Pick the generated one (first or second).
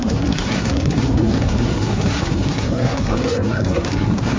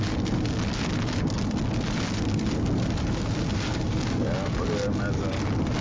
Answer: first